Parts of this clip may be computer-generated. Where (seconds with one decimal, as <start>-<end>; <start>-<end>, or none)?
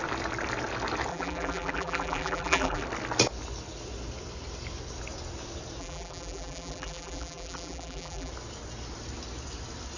1.1-2.8; 5.8-8.3